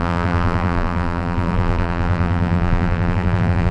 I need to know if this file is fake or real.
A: fake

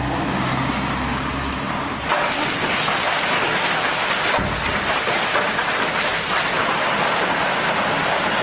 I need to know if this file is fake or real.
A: real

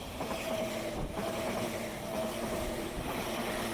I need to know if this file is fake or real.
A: fake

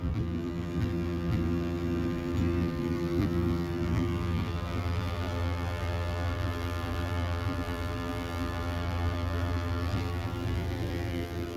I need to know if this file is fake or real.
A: fake